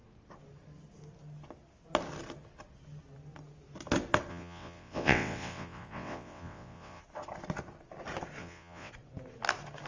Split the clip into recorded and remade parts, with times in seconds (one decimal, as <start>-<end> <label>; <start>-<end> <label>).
0.0-4.3 recorded; 4.3-7.0 remade; 7.0-8.4 recorded; 8.4-8.9 remade; 8.9-9.9 recorded